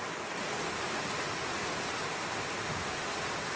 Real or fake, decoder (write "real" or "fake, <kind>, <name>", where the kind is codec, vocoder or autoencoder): real